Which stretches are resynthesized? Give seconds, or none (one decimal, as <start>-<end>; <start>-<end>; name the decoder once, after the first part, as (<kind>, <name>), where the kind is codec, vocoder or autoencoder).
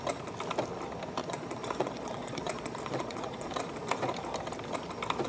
1.2-3.5 (vocoder, Vocos)